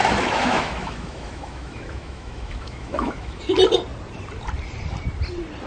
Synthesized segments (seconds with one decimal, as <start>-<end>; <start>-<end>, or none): 0.0-3.4